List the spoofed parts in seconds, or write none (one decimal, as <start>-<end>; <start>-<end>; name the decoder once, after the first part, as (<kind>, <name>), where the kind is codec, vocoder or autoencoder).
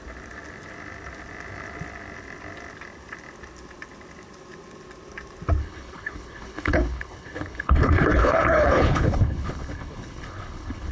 5.6-10.9 (codec, HILCodec)